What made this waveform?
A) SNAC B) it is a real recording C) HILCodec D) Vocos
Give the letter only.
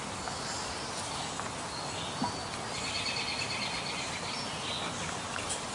B